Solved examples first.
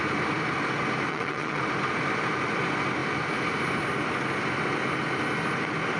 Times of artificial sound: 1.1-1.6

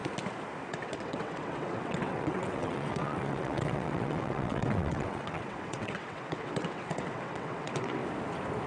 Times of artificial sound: 0.7-8.0

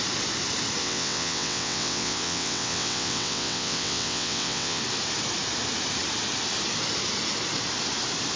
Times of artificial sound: 0.8-4.8

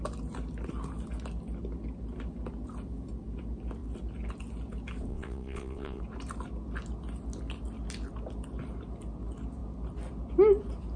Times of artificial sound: 5.1-6.0

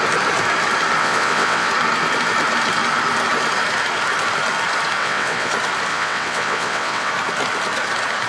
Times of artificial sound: 1.0-1.7; 5.0-5.5; 5.9-7.1